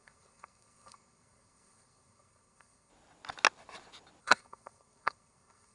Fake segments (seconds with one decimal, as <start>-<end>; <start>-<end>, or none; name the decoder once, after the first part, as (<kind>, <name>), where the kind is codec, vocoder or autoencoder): 0.0-2.9 (codec, SNAC); 4.2-5.7